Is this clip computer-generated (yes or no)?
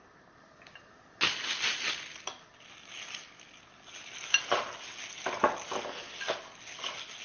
no